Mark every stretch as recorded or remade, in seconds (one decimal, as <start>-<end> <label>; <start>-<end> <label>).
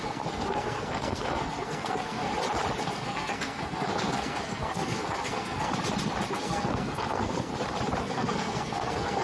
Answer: 0.0-2.3 remade; 2.3-2.8 recorded; 2.8-5.7 remade; 5.7-6.3 recorded; 6.3-7.5 remade; 7.5-8.0 recorded; 8.0-9.2 remade